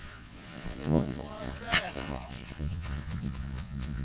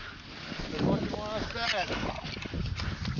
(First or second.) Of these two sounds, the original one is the second